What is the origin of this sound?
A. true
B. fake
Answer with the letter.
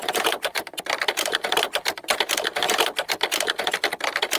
B